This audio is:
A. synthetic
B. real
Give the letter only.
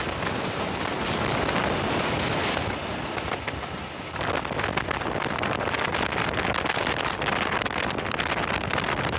B